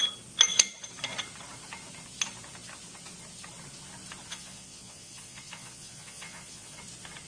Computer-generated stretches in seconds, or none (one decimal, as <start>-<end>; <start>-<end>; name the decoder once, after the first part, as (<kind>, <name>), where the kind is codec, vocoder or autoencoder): 4.3-6.8 (vocoder, Vocos)